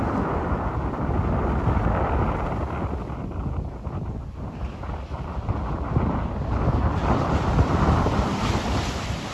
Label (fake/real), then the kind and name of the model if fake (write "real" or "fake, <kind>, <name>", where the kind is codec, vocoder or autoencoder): real